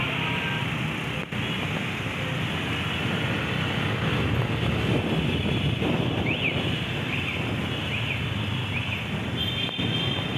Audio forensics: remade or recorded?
recorded